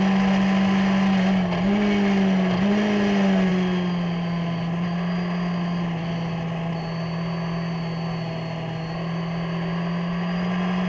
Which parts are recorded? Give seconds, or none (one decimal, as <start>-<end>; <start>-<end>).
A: 0.0-10.9